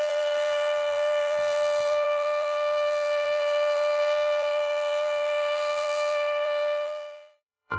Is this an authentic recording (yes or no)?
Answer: no